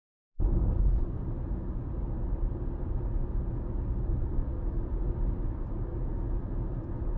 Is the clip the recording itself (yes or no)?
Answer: yes